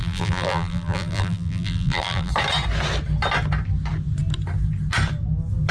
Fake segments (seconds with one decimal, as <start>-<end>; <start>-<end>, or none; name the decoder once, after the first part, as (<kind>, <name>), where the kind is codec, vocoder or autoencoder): 0.0-2.3 (vocoder, BigVGAN v2)